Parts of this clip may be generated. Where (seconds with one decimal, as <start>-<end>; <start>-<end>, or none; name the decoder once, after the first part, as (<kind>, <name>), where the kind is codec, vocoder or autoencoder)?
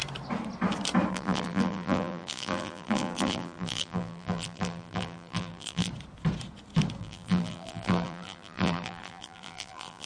1.1-5.9 (vocoder, BigVGAN v2); 7.0-10.1